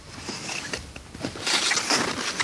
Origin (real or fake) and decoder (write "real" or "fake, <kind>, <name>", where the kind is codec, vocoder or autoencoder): real